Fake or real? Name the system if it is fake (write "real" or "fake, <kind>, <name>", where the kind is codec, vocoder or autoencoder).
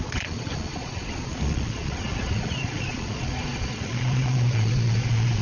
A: fake, vocoder, Vocos